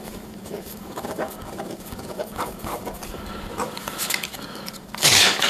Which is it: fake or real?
fake